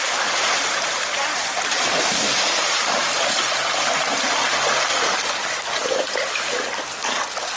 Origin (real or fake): fake